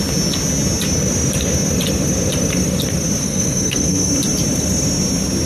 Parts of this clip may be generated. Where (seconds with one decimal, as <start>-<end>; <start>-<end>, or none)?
3.2-4.1